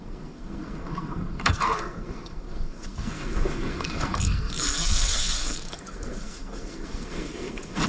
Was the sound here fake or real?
fake